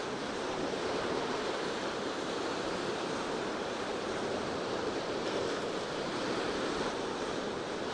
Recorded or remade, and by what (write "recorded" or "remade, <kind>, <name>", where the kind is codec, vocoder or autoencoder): remade, vocoder, BigVGAN v2